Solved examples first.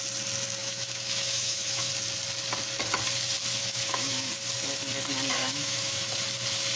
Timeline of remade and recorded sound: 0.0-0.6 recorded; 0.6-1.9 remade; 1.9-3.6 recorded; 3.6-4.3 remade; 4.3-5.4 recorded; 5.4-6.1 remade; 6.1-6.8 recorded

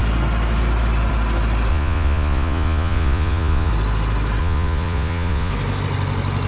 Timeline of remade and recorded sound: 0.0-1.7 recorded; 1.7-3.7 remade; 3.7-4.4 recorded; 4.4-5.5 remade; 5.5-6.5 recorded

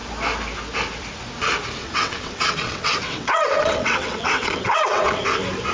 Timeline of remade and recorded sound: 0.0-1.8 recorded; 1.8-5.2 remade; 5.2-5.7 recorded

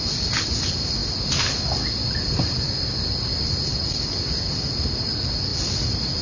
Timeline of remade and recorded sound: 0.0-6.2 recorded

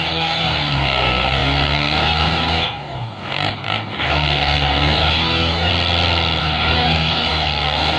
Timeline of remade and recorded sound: 0.0-5.7 remade; 5.7-6.4 recorded; 6.4-8.0 remade

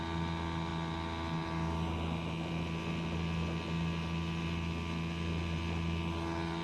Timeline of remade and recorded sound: 0.0-6.6 recorded

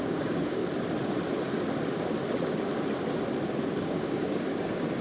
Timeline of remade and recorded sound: 0.0-0.6 remade; 0.6-3.6 recorded; 3.6-5.0 remade